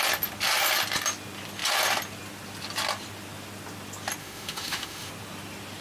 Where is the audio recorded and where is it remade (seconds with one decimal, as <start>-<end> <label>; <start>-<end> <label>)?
0.0-4.2 recorded; 4.2-5.1 remade; 5.1-5.8 recorded